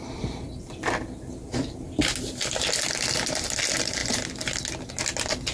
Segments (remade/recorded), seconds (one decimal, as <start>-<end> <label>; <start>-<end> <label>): 0.0-5.5 recorded